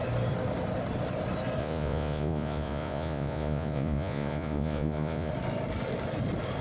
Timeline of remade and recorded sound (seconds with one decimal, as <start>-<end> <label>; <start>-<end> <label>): 0.0-1.6 recorded; 1.6-5.3 remade; 5.3-6.6 recorded

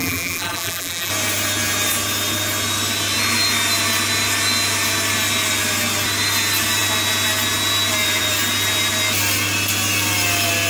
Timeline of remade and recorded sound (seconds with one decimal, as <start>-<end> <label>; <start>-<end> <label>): 0.0-1.1 remade; 1.1-10.7 recorded

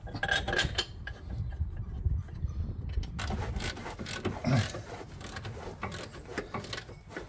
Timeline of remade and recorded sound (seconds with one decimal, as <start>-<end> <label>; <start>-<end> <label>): 0.0-7.3 recorded

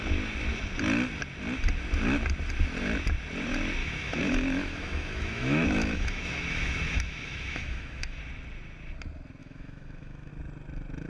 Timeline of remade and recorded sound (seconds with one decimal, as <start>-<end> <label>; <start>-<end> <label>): 0.0-3.8 recorded; 3.8-8.2 remade; 8.2-9.4 recorded; 9.4-10.3 remade; 10.3-11.1 recorded

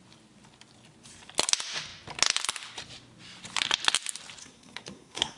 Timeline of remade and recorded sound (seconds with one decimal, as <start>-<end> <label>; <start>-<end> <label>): 0.0-4.4 recorded; 4.4-5.4 remade

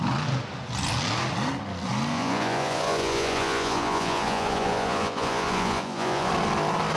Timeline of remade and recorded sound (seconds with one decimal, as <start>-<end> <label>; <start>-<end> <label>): 0.0-2.1 recorded; 2.1-6.3 remade; 6.3-7.0 recorded

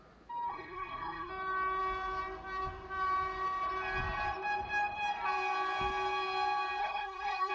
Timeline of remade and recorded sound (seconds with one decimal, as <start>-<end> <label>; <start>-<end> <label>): 0.0-0.5 recorded; 0.5-1.3 remade; 1.3-6.8 recorded; 6.8-7.5 remade